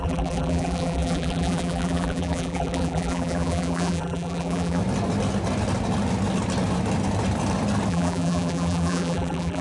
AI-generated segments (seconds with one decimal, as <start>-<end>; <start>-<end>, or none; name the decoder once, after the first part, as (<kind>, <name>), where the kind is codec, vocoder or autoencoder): 0.0-4.8 (vocoder, BigVGAN v2); 7.9-9.6